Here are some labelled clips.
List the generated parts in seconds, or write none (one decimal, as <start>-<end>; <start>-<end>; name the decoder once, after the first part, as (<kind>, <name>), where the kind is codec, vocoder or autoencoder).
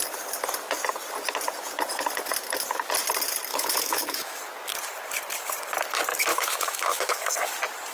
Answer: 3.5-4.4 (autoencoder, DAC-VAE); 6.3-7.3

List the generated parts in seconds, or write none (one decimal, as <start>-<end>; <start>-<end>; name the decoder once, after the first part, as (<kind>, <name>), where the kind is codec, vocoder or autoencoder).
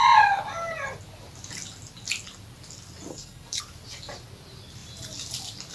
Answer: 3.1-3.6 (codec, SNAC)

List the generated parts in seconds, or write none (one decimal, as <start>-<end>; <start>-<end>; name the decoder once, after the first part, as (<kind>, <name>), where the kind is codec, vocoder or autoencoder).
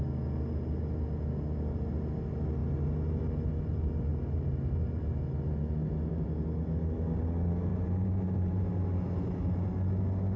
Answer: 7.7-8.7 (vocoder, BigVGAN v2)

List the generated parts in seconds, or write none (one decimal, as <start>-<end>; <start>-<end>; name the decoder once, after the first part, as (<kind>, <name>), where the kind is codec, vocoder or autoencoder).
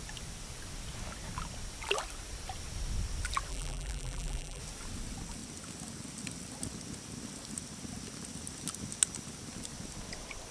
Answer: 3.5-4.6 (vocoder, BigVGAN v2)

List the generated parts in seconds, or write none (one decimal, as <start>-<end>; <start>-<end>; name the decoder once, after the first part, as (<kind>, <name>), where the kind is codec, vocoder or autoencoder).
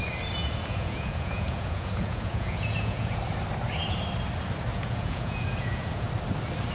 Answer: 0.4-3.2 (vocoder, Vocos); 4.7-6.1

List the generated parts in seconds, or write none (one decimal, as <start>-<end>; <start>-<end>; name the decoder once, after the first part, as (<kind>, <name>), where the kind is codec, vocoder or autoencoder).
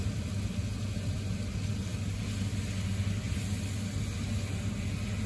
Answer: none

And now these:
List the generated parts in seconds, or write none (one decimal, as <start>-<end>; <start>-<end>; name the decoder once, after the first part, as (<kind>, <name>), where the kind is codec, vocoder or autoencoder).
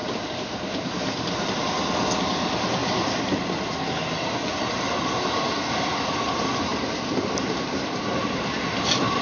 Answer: 0.0-1.6 (vocoder, BigVGAN v2); 6.7-8.3